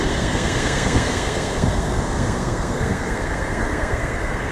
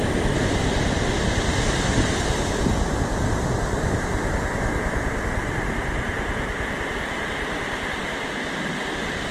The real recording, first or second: second